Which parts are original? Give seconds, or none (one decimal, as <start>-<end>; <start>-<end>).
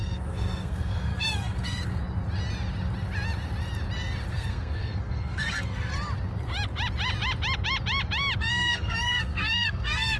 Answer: 2.0-4.3; 5.9-8.4